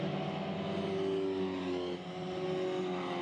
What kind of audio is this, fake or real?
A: real